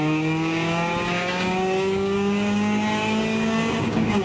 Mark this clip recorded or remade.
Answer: remade